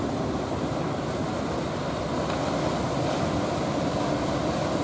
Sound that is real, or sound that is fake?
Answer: real